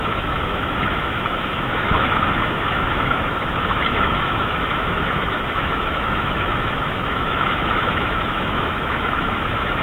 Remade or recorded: remade